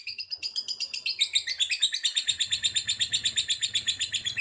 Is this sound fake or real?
real